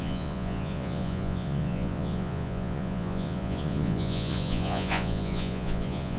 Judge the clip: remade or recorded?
remade